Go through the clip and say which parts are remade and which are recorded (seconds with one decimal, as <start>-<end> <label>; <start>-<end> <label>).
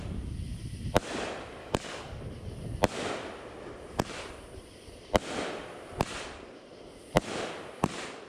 0.0-1.6 recorded; 1.6-2.2 remade; 2.2-8.3 recorded